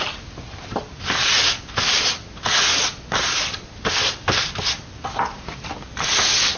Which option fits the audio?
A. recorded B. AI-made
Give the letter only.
A